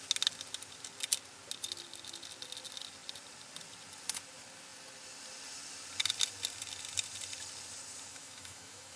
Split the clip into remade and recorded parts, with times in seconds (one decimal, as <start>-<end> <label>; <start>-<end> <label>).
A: 0.0-8.1 recorded; 8.1-9.0 remade